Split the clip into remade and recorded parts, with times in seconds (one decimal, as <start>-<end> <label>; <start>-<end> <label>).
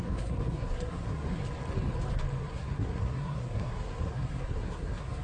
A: 0.0-1.4 remade; 1.4-2.4 recorded; 2.4-5.2 remade